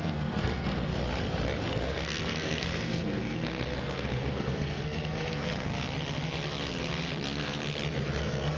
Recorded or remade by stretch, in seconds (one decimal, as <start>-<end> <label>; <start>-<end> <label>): 0.0-0.9 remade; 0.9-1.7 recorded; 1.7-5.7 remade; 5.7-8.2 recorded; 8.2-8.6 remade